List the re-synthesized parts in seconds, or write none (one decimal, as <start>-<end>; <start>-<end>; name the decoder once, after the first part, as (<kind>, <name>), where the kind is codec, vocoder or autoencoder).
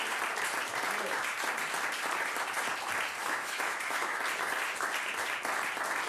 3.2-4.2 (autoencoder, DAC-VAE)